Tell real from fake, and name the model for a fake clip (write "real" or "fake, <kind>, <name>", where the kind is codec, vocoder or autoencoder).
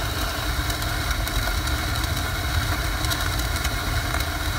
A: real